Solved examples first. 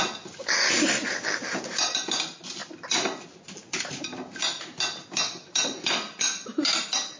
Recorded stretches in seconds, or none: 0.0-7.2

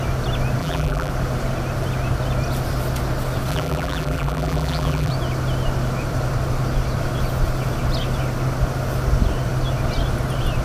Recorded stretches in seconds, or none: 0.0-0.6; 1.1-3.5; 5.1-10.6

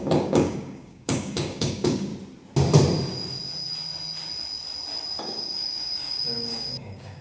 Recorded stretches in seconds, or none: 2.1-5.2

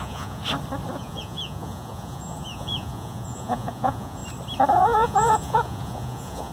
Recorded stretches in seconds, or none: 0.4-0.9; 4.2-4.7

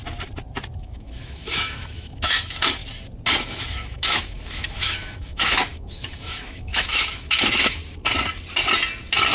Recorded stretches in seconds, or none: 0.0-0.8; 2.8-3.4; 7.8-9.3

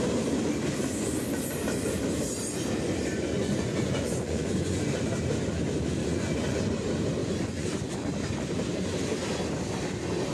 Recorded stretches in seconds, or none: 0.0-3.3; 4.8-6.0; 6.6-7.2; 7.9-10.3